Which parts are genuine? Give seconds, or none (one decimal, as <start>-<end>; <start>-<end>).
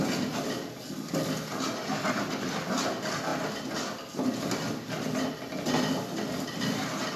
0.0-7.2